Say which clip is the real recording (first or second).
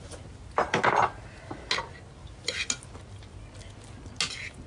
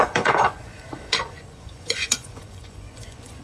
first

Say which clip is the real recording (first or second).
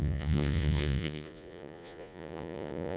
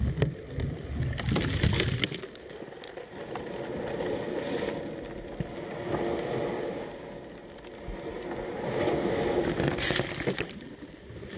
second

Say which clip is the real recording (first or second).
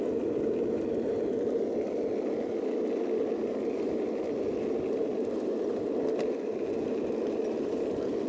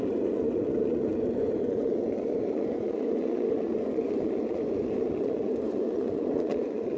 first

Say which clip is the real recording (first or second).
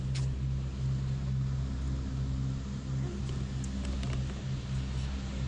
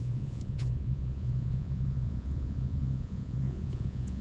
first